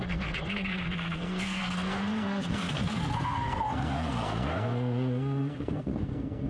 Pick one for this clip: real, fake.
fake